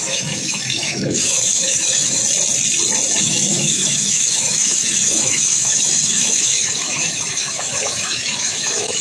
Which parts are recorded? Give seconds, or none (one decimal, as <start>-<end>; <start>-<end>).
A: 2.2-3.2